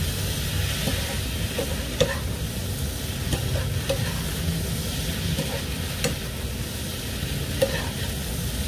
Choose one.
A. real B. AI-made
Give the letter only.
A